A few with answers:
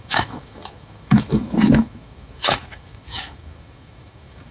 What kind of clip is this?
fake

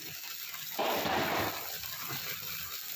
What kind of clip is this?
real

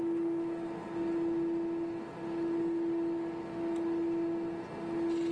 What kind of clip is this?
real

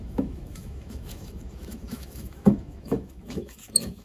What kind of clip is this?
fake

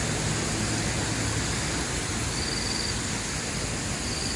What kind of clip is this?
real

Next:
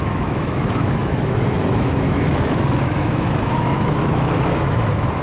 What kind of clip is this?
fake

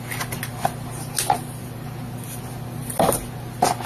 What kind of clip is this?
real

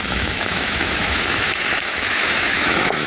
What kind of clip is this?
fake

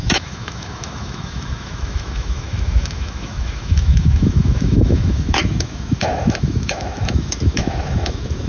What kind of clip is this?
fake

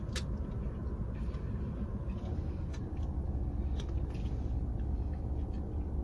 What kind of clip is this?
real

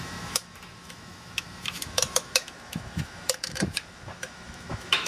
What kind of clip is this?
fake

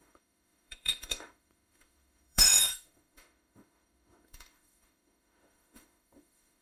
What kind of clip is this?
fake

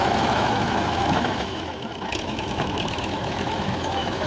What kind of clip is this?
fake